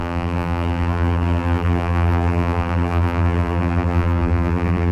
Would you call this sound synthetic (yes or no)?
yes